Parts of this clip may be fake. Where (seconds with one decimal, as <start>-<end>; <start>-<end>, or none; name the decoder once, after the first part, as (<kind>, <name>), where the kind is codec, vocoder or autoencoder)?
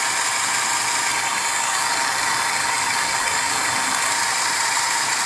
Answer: 1.1-4.1 (codec, DAC)